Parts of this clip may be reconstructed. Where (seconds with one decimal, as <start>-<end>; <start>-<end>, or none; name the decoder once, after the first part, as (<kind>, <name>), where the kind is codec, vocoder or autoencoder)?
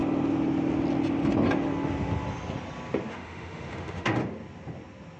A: 3.1-4.2 (autoencoder, DAC-VAE)